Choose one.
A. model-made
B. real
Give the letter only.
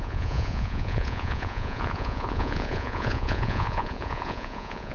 A